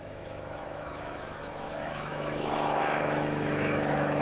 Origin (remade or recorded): remade